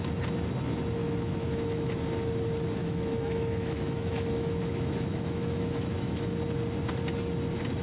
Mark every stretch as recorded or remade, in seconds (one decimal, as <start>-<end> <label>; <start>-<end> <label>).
0.0-1.0 recorded; 1.0-1.9 remade; 1.9-2.8 recorded; 2.8-6.3 remade; 6.3-7.8 recorded